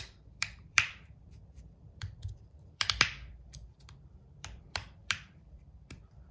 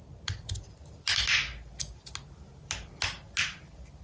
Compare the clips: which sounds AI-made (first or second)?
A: first